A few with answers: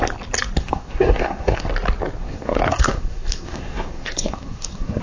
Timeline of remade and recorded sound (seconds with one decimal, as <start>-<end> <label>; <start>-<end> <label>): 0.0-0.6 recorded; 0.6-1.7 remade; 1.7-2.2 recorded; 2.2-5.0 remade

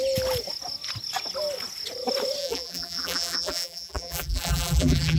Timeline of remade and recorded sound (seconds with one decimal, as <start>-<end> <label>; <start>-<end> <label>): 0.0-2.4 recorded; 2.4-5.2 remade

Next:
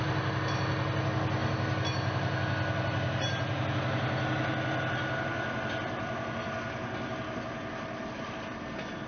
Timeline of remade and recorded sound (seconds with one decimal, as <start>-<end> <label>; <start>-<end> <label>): 0.0-9.1 recorded

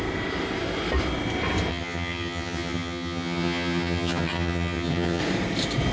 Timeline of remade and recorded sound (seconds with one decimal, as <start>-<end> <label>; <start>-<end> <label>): 0.0-1.7 recorded; 1.7-5.2 remade; 5.2-5.9 recorded

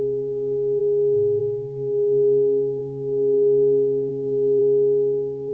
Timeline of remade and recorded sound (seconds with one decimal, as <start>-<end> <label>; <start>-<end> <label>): 0.0-0.8 remade; 0.8-1.4 recorded; 1.4-4.6 remade; 4.6-5.5 recorded

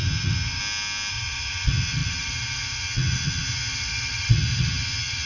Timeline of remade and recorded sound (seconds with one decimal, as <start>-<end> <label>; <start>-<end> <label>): 0.0-0.6 remade; 0.6-1.1 recorded; 1.1-5.3 remade

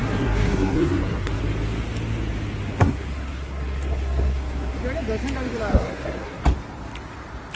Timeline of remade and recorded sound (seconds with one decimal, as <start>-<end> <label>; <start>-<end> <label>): 0.0-1.4 remade; 1.4-2.7 recorded; 2.7-4.8 remade; 4.8-5.7 recorded; 5.7-6.4 remade; 6.4-7.6 recorded